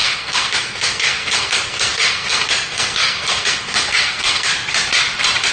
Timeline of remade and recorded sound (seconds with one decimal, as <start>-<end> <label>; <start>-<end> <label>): 0.0-4.5 remade; 4.5-5.5 recorded